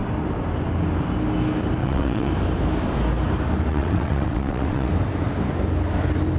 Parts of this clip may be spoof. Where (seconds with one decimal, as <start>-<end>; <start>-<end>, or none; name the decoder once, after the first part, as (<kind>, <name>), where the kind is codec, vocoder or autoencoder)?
1.8-2.3 (vocoder, WaveNeXt); 3.7-4.9